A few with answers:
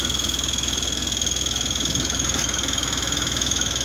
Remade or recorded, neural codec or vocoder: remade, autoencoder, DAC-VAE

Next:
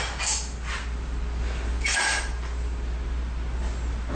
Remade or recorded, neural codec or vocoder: recorded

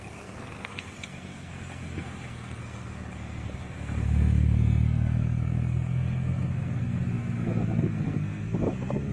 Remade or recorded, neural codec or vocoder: remade, codec, SNAC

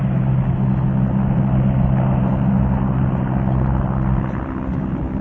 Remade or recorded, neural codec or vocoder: recorded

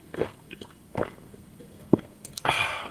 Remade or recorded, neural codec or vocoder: remade, codec, SNAC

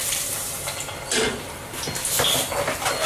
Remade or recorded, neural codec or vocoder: recorded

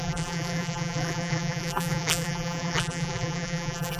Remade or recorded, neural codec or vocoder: remade, vocoder, BigVGAN v2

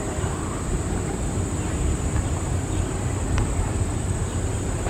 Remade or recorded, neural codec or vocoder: recorded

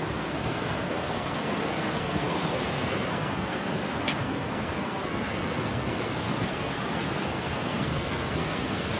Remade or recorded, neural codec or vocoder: remade, codec, SNAC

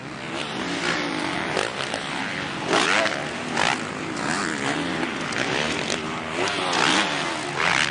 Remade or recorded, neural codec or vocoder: recorded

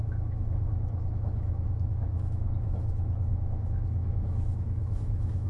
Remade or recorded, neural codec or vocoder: remade, autoencoder, DAC-VAE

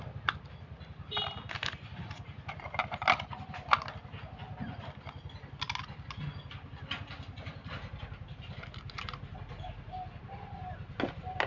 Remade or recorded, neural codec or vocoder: recorded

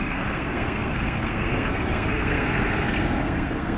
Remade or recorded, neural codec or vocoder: remade, codec, SNAC